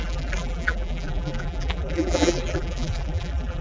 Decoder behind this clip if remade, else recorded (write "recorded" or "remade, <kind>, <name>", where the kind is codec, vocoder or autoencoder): remade, vocoder, BigVGAN v2